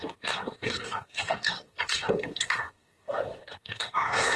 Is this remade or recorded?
remade